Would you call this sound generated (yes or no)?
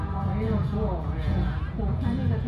yes